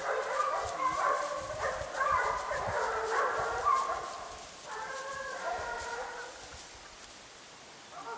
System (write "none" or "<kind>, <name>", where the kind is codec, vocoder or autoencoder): none